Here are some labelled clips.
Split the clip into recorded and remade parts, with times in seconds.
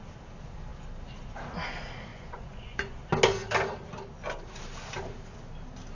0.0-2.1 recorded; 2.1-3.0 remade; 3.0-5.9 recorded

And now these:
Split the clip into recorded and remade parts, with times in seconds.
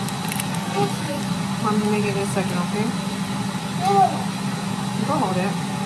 0.0-0.5 recorded; 0.5-1.2 remade; 1.2-5.9 recorded